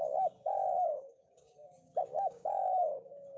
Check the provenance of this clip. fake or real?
fake